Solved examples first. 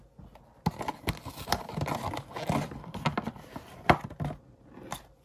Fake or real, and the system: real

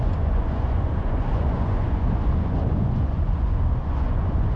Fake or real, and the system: fake, vocoder, Vocos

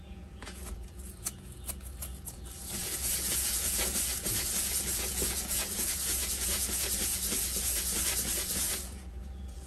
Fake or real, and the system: fake, vocoder, Vocos